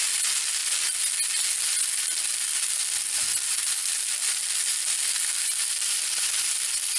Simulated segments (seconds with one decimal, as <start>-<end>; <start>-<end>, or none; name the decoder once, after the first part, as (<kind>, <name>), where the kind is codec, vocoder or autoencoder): none